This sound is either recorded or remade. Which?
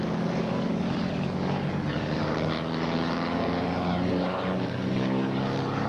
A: remade